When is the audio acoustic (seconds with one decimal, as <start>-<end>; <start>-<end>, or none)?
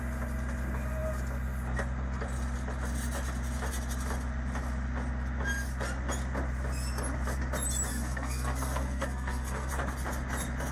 0.0-7.9; 9.7-10.7